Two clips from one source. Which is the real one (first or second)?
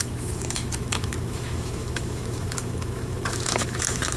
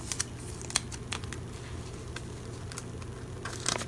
second